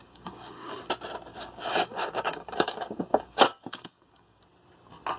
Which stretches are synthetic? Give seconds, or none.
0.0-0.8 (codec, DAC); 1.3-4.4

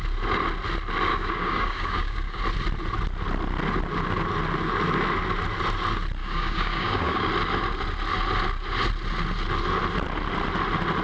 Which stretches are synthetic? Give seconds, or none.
1.1-2.4 (codec, DAC); 6.2-7.3

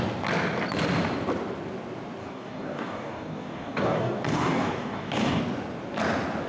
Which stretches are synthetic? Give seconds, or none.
2.2-5.4 (codec, DAC)

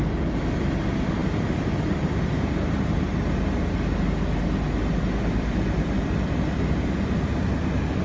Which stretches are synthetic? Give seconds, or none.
none

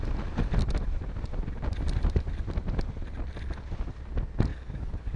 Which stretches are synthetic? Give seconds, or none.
4.5-5.2 (codec, DAC)

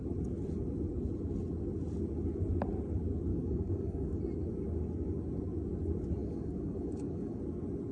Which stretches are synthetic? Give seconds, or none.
3.3-4.2 (codec, DAC); 6.2-7.4

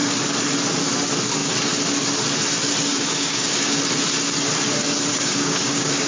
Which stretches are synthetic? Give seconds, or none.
2.9-3.8 (codec, DAC); 5.1-6.1